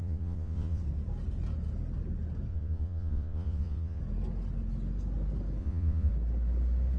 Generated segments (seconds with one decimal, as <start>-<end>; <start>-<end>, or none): 0.0-0.8; 2.5-4.0; 5.6-6.1